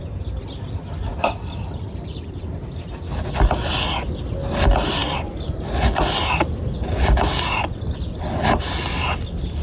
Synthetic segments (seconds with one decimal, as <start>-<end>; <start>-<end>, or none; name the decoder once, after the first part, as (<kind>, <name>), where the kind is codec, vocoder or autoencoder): 1.1-2.9 (vocoder, BigVGAN v2)